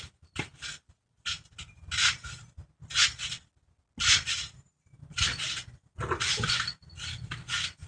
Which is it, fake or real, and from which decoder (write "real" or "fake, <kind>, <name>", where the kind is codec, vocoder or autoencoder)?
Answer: real